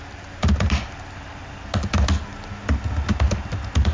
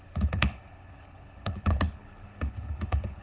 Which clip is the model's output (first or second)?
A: second